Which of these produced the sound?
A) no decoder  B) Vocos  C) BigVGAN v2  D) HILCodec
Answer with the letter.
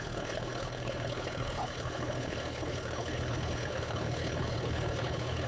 D